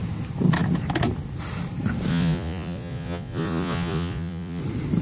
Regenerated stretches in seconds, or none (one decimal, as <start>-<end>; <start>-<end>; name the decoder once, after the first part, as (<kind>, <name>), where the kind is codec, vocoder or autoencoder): 2.1-4.6 (vocoder, Vocos)